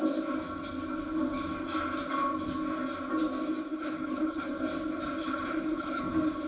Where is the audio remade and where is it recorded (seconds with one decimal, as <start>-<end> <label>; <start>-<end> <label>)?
0.0-3.7 recorded; 3.7-4.5 remade; 4.5-5.2 recorded; 5.2-6.0 remade; 6.0-6.5 recorded